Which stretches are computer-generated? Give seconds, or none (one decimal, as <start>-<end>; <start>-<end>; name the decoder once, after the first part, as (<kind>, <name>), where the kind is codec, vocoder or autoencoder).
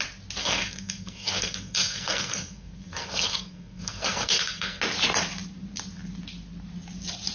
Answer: 0.4-4.8 (codec, SNAC)